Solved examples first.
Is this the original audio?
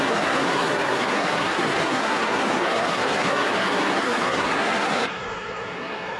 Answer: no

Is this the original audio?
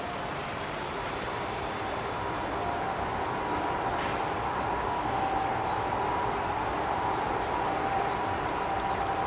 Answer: yes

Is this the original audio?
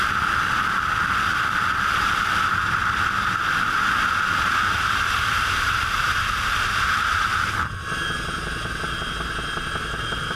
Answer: yes